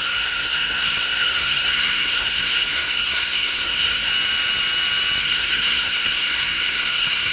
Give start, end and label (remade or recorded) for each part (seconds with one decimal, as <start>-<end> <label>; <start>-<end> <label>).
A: 0.0-4.1 remade; 4.1-5.2 recorded; 5.2-7.3 remade